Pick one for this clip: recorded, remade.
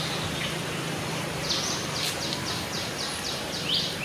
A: recorded